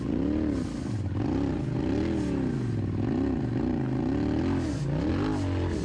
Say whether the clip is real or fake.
real